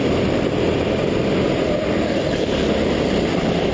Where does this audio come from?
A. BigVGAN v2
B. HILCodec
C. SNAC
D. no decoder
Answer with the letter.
A